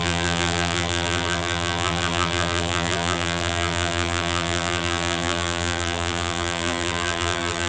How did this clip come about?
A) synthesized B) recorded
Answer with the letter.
A